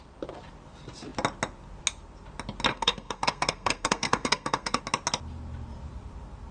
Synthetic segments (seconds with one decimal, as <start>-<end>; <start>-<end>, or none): 2.7-4.8